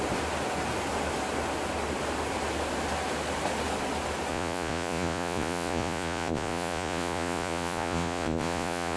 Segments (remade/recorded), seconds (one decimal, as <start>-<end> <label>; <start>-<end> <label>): 0.0-4.3 recorded; 4.3-9.0 remade